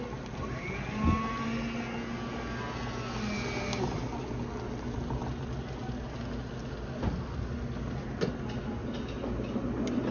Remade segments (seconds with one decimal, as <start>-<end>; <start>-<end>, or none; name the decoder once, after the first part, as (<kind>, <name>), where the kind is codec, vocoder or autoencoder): none